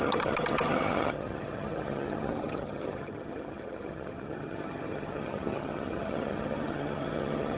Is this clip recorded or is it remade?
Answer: remade